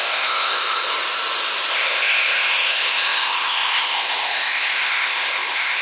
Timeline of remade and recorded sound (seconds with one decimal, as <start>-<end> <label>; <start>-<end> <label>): 0.0-0.9 remade; 0.9-1.7 recorded; 1.7-5.8 remade